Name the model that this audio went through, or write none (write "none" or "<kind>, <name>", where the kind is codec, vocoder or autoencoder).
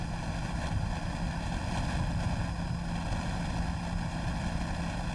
none